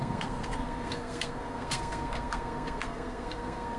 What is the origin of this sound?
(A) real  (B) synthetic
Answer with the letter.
B